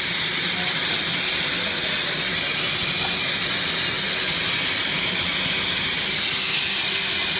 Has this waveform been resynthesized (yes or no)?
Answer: no